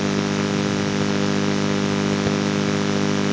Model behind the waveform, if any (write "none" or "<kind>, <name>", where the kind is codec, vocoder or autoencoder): none